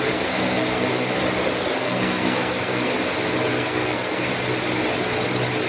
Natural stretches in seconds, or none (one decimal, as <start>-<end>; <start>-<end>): 1.2-1.8; 2.9-3.5; 4.3-5.7